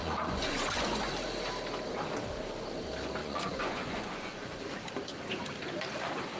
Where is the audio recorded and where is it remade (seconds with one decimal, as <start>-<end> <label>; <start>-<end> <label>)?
0.0-1.1 remade; 1.1-3.2 recorded; 3.2-4.6 remade; 4.6-6.4 recorded